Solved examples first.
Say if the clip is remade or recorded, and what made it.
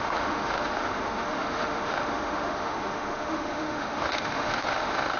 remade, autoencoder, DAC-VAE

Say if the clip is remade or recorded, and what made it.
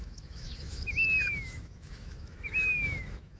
remade, autoencoder, DAC-VAE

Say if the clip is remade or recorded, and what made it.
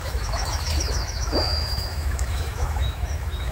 remade, autoencoder, DAC-VAE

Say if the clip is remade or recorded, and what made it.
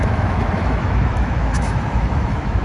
remade, autoencoder, DAC-VAE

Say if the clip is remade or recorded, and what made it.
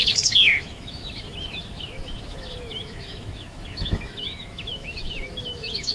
remade, autoencoder, DAC-VAE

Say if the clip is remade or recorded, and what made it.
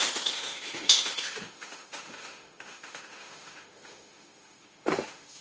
remade, autoencoder, DAC-VAE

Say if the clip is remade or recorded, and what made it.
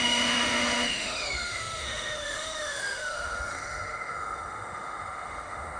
remade, autoencoder, DAC-VAE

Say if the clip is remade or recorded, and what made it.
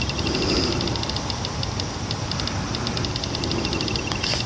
recorded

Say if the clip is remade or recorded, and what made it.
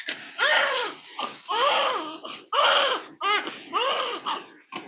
recorded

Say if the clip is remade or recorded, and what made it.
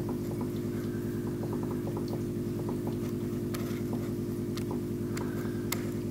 recorded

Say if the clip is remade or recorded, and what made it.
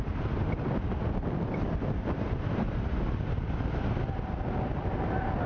recorded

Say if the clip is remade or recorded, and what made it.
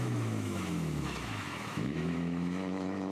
remade, autoencoder, DAC-VAE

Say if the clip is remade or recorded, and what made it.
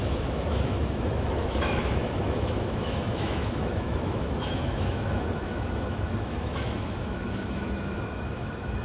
remade, autoencoder, DAC-VAE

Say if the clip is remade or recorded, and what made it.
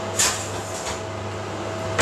recorded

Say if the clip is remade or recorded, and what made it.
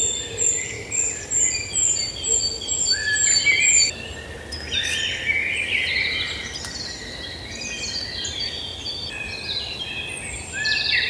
recorded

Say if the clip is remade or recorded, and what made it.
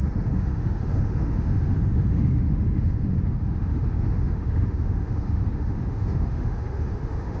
remade, autoencoder, DAC-VAE